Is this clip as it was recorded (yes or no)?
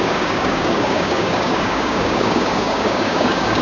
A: no